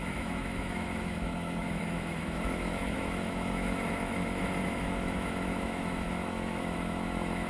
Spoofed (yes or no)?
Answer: yes